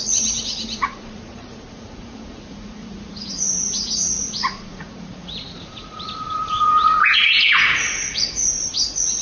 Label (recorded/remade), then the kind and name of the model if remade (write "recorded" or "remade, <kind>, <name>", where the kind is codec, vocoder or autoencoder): remade, vocoder, Vocos